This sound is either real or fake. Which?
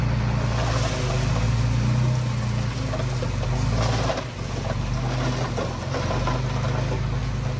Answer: real